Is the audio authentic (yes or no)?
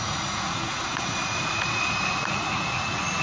no